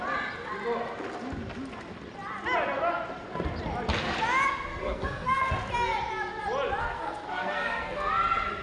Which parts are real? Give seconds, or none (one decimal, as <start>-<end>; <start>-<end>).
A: 0.0-4.7; 5.5-6.8; 8.1-8.6